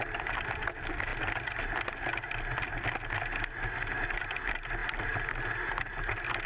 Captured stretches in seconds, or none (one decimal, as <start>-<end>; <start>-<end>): 0.0-6.5